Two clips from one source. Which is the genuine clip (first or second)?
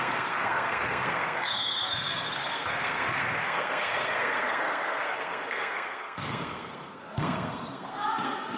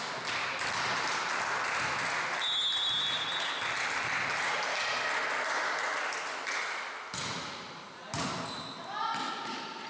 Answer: second